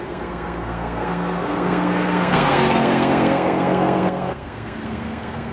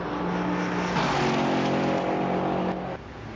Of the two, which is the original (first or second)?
second